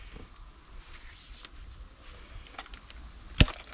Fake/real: real